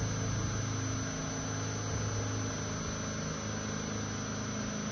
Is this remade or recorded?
recorded